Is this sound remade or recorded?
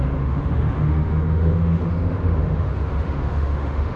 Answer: remade